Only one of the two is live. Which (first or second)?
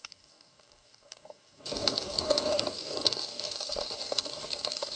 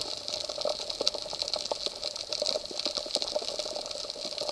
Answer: second